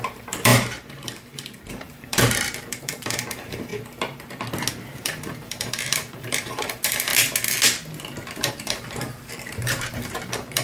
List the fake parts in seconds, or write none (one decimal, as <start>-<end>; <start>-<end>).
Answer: 0.0-3.7; 4.7-7.1; 8.5-10.6